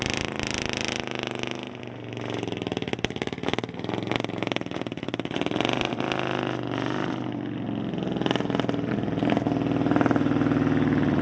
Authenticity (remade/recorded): recorded